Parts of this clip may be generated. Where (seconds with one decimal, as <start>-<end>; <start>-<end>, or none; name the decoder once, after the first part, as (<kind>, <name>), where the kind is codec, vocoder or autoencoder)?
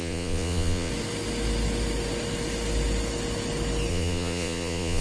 0.0-0.9 (vocoder, Vocos); 3.9-5.0